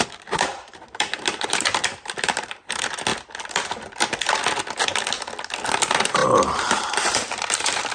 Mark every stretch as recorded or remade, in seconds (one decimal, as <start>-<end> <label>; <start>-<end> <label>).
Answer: 0.0-3.1 remade; 3.1-5.7 recorded; 5.7-7.9 remade